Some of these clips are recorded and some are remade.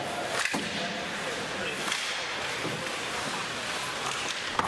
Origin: recorded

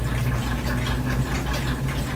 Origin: recorded